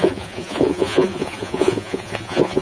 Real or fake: fake